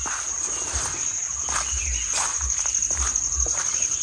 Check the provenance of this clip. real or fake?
real